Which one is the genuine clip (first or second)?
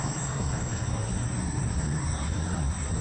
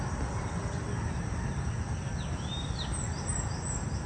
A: second